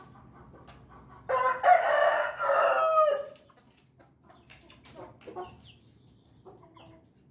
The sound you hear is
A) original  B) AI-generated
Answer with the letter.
A